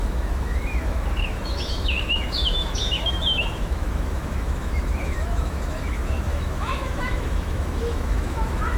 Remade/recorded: remade